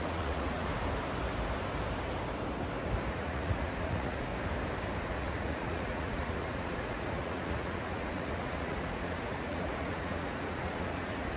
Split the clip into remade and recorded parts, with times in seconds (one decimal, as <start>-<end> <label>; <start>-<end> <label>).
0.0-0.7 remade; 0.7-3.1 recorded; 3.1-4.3 remade; 4.3-5.0 recorded; 5.0-11.4 remade